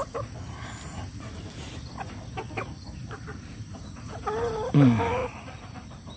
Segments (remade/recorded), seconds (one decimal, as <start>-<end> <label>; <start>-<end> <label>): 0.0-3.0 recorded; 3.0-4.0 remade; 4.0-5.2 recorded; 5.2-6.2 remade

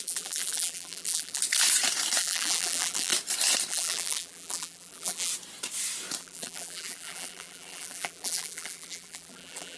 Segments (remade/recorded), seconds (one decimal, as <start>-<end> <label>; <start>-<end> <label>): 0.0-1.4 remade; 1.4-2.2 recorded; 2.2-3.1 remade; 3.1-3.7 recorded; 3.7-5.3 remade; 5.3-6.2 recorded; 6.2-9.8 remade

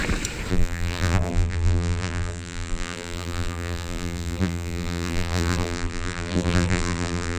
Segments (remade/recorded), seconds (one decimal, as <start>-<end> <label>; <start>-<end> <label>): 0.0-0.5 recorded; 0.5-7.4 remade

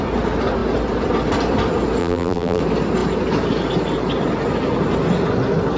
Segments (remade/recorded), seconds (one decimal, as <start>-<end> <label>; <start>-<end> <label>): 0.0-2.0 recorded; 2.0-2.6 remade; 2.6-5.8 recorded